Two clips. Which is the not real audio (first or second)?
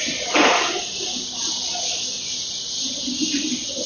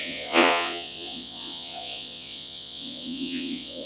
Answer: second